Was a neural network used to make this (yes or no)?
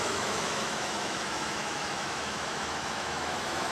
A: yes